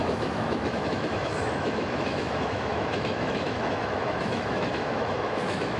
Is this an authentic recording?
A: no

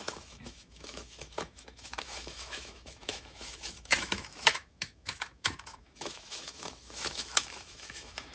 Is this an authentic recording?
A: no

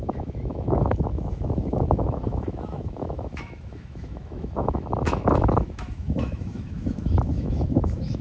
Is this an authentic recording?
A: no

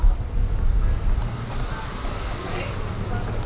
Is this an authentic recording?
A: yes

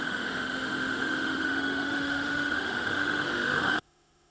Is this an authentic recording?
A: no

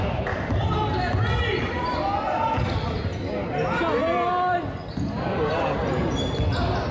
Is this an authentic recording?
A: yes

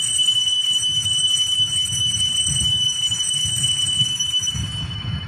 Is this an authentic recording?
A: no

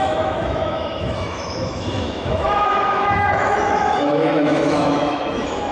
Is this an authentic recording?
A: no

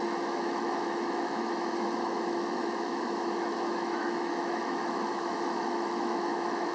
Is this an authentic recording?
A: no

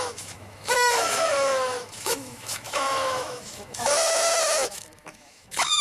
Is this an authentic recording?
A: no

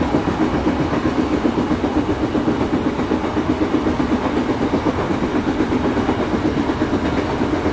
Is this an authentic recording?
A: yes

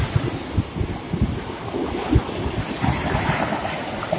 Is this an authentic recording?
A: yes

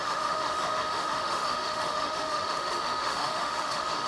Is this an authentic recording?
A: no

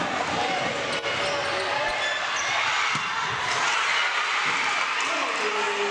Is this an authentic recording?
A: yes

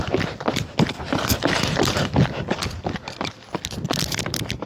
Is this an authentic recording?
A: yes